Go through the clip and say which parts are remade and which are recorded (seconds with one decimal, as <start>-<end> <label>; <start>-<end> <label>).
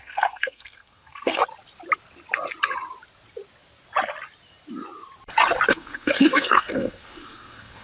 0.0-1.4 remade; 1.4-5.7 recorded; 5.7-7.8 remade